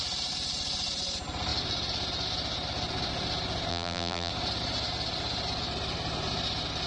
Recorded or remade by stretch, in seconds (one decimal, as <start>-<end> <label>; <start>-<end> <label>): 0.0-3.7 recorded; 3.7-4.3 remade; 4.3-6.9 recorded